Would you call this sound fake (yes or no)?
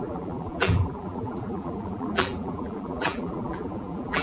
yes